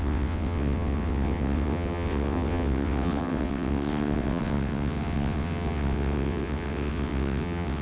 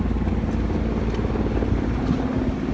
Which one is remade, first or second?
first